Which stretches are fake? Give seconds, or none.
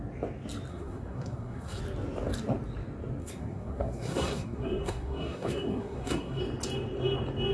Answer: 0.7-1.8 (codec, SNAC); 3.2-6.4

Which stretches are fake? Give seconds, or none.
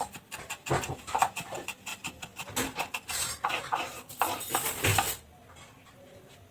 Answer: none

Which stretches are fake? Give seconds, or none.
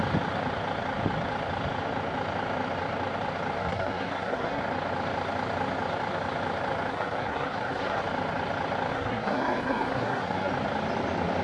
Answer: 3.6-4.6 (codec, SNAC); 6.9-8.0; 8.9-10.5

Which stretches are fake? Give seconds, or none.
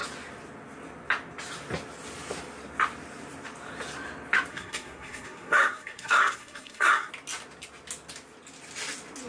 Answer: 4.5-7.1 (codec, SNAC)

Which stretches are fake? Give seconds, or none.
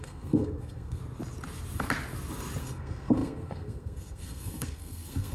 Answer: 0.0-1.0 (codec, SNAC); 2.6-5.3